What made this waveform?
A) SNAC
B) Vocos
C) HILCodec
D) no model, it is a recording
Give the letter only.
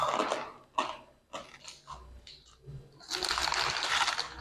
D